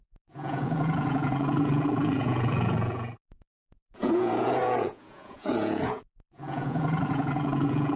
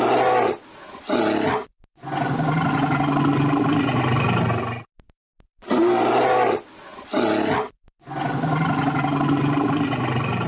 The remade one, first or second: first